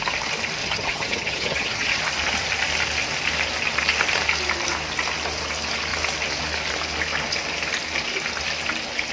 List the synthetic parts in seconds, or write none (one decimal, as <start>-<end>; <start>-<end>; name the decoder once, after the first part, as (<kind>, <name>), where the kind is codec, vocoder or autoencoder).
0.6-2.0 (vocoder, HiFi-GAN)